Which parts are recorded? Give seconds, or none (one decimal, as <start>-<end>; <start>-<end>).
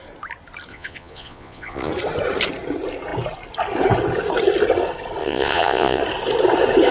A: 0.0-0.7; 1.9-5.2; 6.0-6.9